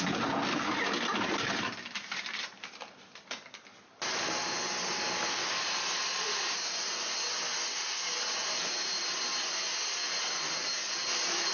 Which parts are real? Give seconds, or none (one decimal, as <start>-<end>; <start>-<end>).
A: 0.0-11.5